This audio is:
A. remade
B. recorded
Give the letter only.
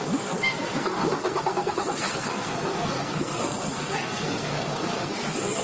A